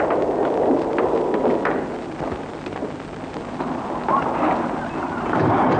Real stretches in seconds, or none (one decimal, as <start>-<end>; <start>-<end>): 0.0-5.8